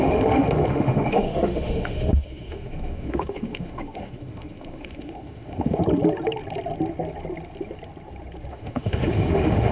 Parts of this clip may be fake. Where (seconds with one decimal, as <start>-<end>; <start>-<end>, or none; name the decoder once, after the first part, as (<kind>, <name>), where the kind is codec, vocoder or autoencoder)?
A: 0.0-5.8 (autoencoder, DAC-VAE); 8.5-9.7